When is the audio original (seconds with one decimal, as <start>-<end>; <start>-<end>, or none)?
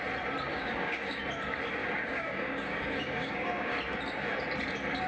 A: 0.0-0.5; 1.2-1.8; 3.8-5.1